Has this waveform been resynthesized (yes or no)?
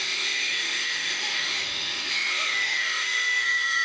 yes